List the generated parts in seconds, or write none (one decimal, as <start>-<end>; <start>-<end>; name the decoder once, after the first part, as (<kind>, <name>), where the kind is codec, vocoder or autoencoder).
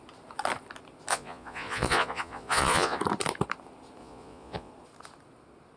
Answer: 1.1-3.0 (vocoder, Vocos); 4.0-4.7